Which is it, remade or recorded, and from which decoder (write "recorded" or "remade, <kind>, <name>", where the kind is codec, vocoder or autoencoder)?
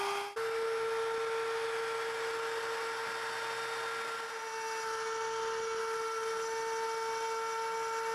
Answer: recorded